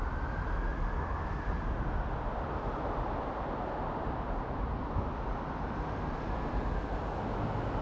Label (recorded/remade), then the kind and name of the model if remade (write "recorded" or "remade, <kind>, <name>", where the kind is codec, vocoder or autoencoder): recorded